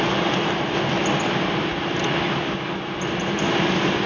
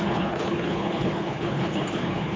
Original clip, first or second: first